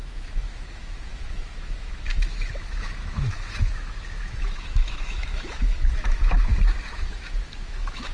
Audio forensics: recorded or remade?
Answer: remade